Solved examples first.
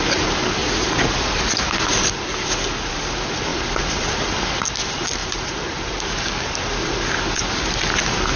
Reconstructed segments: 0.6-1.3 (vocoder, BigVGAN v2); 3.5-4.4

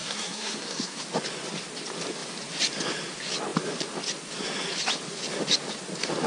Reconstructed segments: 0.0-1.0 (codec, SNAC)

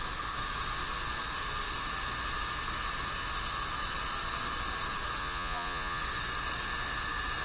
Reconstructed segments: 5.2-6.0 (vocoder, Vocos)

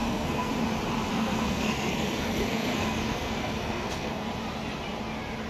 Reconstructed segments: 0.0-0.5 (codec, SNAC); 1.1-4.3

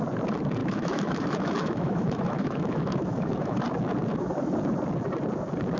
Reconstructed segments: 0.6-3.6 (autoencoder, DAC-VAE)